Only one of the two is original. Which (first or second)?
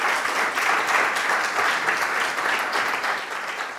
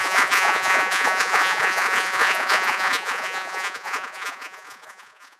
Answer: first